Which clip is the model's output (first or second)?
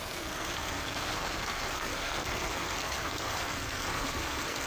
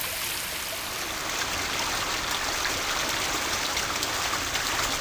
first